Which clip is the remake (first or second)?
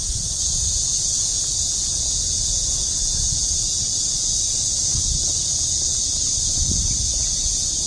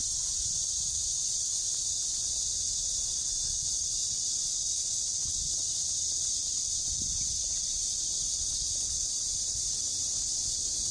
first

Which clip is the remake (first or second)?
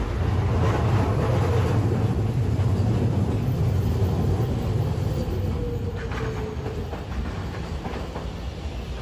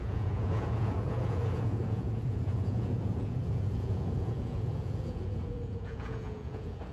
second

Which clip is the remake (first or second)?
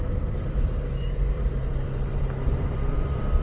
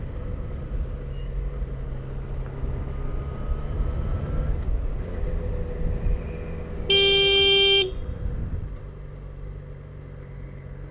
first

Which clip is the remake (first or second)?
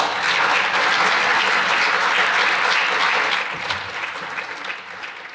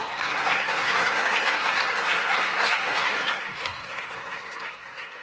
second